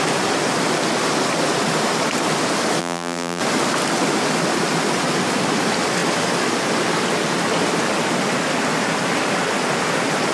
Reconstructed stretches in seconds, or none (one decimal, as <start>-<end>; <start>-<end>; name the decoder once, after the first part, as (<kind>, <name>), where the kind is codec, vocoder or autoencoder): 2.8-3.4 (vocoder, BigVGAN v2)